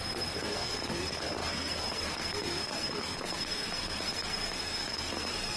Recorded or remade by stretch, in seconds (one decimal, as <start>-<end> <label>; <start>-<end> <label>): 0.0-5.6 remade